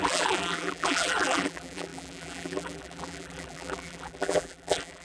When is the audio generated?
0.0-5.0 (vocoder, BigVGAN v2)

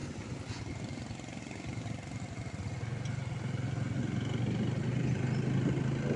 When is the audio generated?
1.4-2.9 (vocoder, BigVGAN v2)

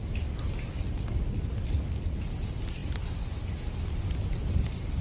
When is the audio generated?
none

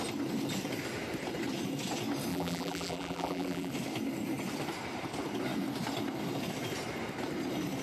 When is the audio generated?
2.3-3.7 (vocoder, BigVGAN v2)

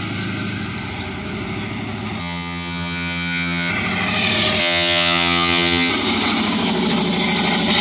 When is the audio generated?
2.2-3.7 (vocoder, HiFi-GAN); 4.6-5.9